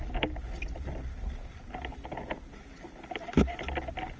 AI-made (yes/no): no